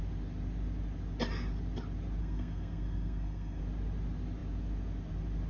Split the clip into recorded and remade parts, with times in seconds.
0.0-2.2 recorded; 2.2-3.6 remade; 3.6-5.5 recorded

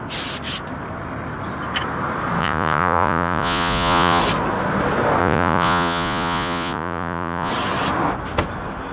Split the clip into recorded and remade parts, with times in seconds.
0.0-2.4 recorded; 2.4-4.2 remade; 4.2-5.2 recorded; 5.2-7.5 remade; 7.5-8.9 recorded

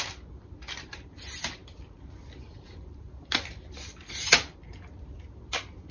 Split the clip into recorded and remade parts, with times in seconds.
0.0-5.9 recorded